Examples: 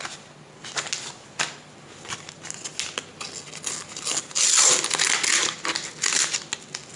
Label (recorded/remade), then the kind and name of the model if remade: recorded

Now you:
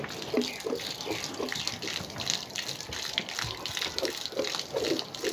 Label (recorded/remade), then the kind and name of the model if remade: recorded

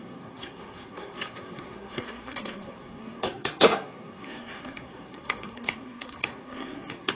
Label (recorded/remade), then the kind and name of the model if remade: remade, codec, SNAC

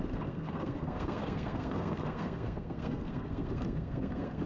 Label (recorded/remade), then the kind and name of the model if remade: remade, codec, SNAC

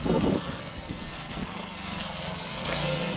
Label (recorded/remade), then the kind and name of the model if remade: remade, codec, SNAC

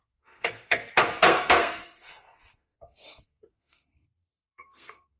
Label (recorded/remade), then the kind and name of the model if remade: remade, codec, SNAC